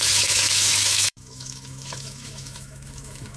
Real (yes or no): no